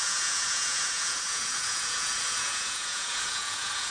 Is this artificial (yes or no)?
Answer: yes